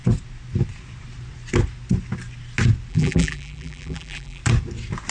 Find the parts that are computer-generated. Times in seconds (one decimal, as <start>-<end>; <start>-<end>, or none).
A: 2.9-4.4